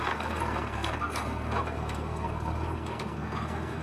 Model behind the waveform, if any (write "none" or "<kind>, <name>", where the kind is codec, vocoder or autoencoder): codec, SNAC